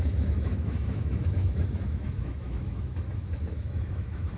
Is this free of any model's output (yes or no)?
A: no